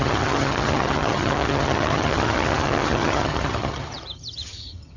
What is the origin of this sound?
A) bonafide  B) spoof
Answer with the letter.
B